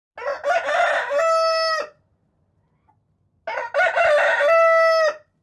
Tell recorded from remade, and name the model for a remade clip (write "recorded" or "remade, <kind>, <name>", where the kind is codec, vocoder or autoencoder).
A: recorded